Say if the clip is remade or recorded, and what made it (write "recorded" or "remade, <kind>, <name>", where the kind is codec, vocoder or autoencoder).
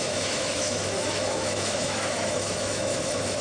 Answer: remade, autoencoder, DAC-VAE